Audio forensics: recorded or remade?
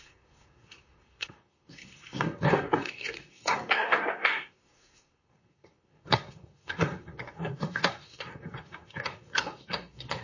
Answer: remade